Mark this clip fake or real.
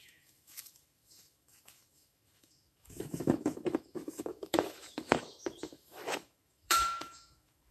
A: fake